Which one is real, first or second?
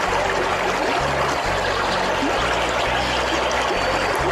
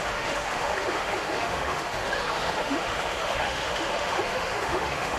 first